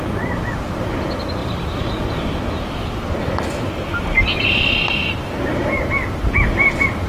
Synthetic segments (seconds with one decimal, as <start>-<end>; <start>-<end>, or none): 1.4-5.7